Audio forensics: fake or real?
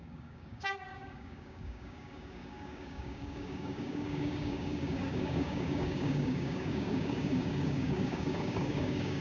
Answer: fake